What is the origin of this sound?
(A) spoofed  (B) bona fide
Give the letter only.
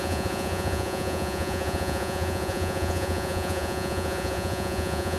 A